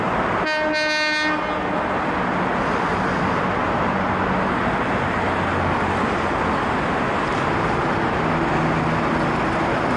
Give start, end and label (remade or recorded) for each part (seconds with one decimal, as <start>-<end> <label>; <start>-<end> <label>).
0.0-10.0 recorded